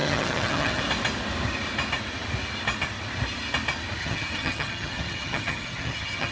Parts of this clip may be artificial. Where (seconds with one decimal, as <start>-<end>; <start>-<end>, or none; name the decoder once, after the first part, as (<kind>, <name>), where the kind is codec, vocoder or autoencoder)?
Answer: 0.0-0.8 (vocoder, HiFi-GAN); 4.0-6.3